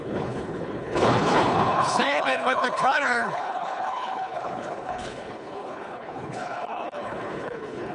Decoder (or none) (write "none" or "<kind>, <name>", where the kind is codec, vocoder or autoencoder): codec, HILCodec